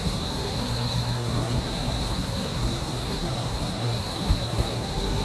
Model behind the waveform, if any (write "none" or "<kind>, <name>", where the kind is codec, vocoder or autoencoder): codec, SNAC